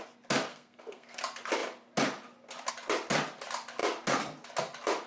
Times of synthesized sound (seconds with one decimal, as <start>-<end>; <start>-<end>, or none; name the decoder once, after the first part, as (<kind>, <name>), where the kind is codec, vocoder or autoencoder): 0.5-1.2 (codec, SNAC)